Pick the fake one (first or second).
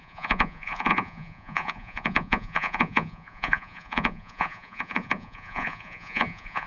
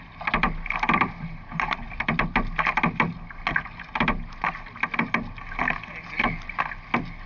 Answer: first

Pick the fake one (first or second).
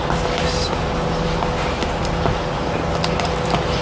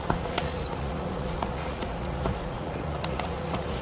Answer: second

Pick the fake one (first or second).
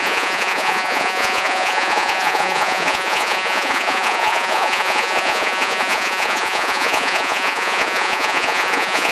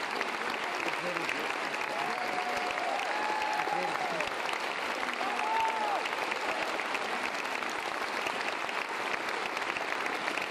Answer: first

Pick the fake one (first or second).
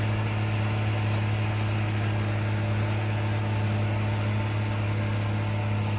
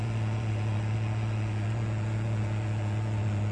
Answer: second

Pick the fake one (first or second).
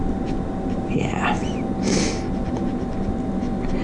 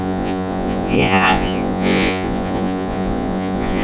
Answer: second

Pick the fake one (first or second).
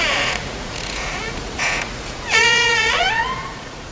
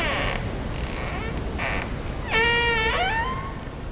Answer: first